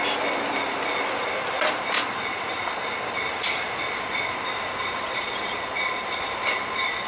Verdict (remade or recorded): recorded